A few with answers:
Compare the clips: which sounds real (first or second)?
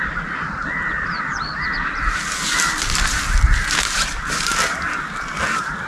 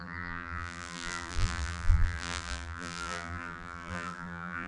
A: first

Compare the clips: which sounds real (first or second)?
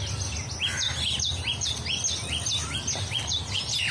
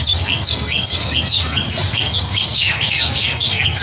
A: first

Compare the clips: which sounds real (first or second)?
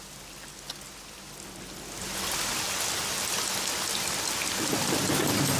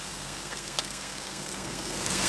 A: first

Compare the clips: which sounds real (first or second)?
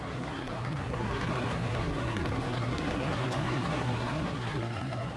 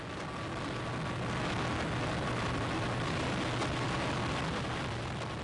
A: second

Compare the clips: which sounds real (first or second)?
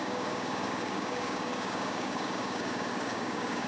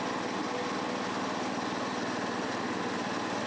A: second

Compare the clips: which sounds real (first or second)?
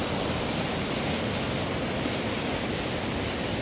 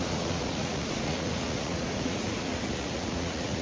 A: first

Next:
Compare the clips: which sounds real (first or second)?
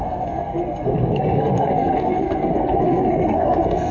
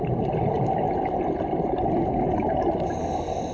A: second